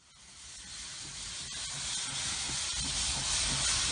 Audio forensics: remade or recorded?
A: recorded